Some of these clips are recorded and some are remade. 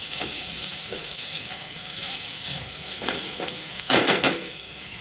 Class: remade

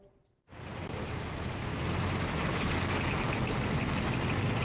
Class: recorded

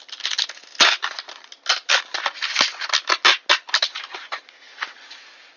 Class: recorded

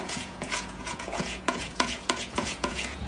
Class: remade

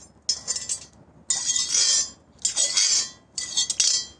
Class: recorded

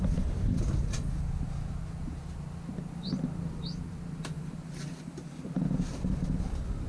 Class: recorded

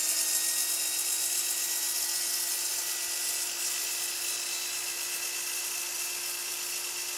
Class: recorded